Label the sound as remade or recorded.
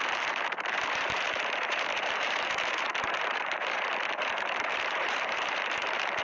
remade